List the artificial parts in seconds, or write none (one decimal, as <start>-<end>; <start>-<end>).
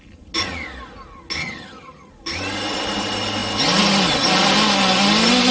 1.4-2.1